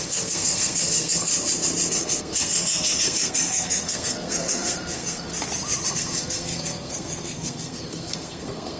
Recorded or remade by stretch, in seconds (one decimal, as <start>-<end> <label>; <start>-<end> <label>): 0.0-1.3 remade; 1.3-1.9 recorded; 1.9-5.3 remade; 5.3-5.9 recorded; 5.9-8.8 remade